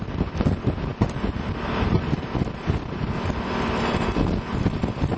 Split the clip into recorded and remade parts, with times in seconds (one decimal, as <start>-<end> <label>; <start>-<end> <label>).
0.0-5.2 recorded